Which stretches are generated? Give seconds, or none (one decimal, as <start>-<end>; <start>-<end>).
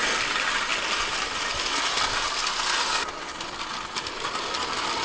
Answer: none